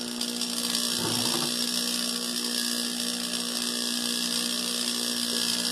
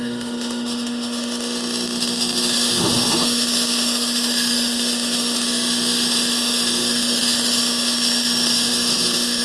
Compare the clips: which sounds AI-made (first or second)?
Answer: second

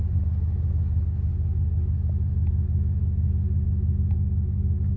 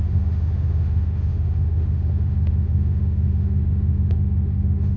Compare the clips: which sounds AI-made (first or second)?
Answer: second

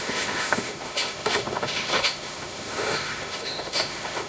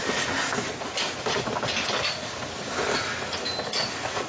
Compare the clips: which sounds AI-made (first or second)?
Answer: first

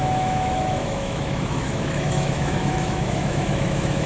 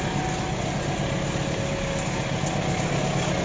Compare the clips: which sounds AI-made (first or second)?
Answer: first